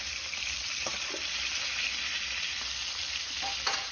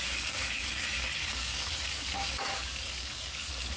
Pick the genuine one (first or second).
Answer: first